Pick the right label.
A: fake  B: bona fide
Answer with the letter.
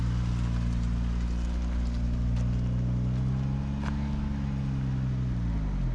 B